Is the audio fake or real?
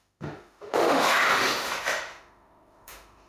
fake